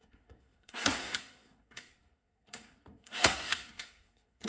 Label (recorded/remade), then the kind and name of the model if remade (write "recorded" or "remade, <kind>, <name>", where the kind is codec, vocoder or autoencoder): remade, codec, SNAC